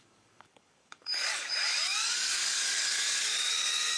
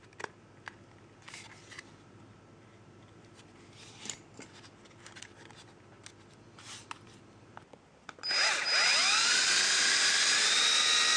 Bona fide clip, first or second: second